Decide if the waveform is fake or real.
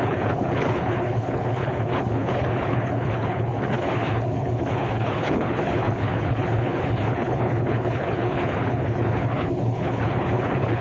fake